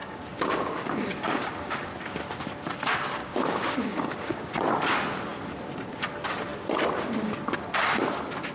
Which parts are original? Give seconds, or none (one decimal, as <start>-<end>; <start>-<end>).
1.9-3.2; 4.5-8.5